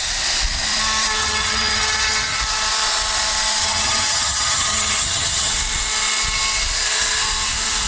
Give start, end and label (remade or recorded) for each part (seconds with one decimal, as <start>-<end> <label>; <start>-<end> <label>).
0.0-1.2 recorded; 1.2-2.4 remade; 2.4-3.6 recorded; 3.6-5.5 remade; 5.5-7.9 recorded